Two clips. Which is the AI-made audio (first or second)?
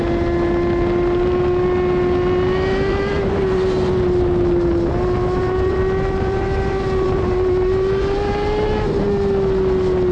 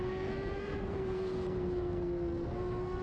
second